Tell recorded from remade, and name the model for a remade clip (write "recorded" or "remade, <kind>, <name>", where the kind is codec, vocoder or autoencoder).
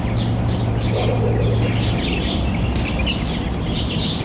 recorded